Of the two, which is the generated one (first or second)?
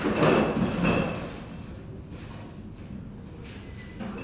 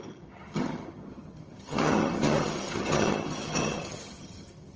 second